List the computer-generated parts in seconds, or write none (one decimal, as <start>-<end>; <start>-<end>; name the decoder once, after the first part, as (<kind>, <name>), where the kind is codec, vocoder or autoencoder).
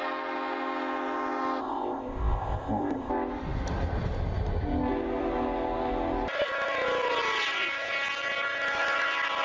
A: 1.6-3.1 (codec, ZipCodec)